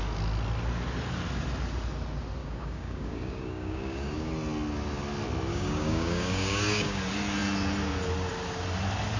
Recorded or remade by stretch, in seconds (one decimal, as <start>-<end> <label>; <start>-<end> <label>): 0.0-2.4 recorded; 2.4-4.3 remade; 4.3-5.5 recorded; 5.5-7.0 remade; 7.0-9.2 recorded